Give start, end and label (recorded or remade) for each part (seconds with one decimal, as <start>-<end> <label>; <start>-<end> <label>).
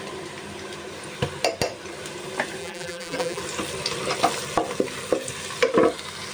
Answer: 0.0-2.6 recorded; 2.6-3.4 remade; 3.4-6.3 recorded